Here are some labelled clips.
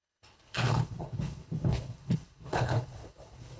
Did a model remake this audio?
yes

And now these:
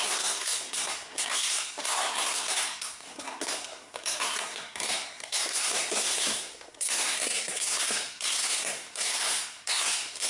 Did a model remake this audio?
yes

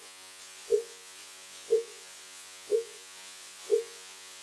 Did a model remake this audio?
yes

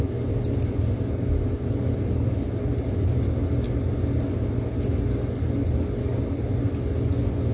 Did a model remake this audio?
no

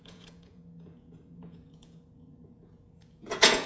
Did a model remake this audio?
yes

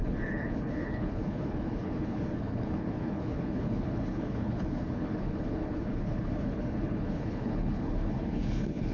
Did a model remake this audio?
yes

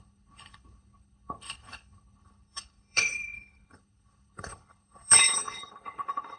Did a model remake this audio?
yes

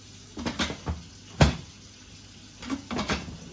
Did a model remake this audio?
no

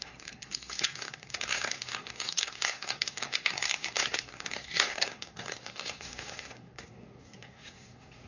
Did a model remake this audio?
yes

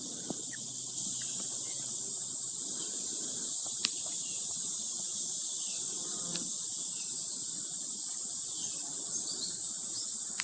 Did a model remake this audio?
no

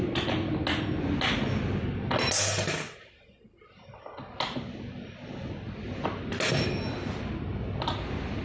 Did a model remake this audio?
no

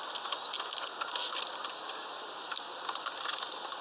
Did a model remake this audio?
no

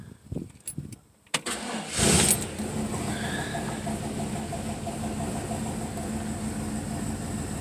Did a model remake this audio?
no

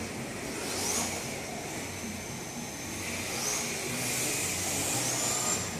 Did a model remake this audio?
no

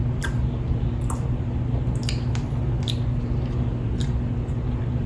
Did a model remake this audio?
no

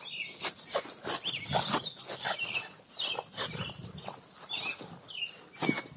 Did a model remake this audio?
no